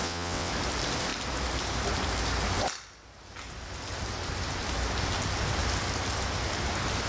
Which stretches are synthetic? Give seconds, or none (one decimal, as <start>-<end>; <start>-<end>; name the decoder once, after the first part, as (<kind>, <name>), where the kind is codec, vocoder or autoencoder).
0.0-0.5 (vocoder, WaveNeXt)